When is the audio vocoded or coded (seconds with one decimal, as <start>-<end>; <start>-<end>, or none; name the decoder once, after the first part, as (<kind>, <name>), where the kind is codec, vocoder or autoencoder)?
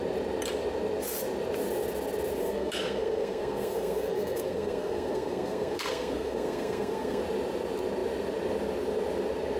2.4-7.2 (codec, SNAC)